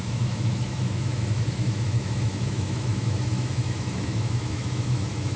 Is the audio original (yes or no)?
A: no